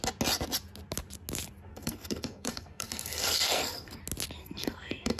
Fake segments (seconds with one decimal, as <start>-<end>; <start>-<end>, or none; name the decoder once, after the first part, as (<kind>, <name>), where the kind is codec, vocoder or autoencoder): 1.7-4.0 (codec, SNAC); 4.4-5.2